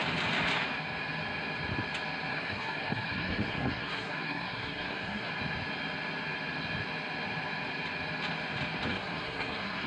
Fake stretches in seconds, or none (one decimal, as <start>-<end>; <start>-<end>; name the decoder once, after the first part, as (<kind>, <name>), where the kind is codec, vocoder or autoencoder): 2.3-5.3 (codec, SNAC); 8.9-9.9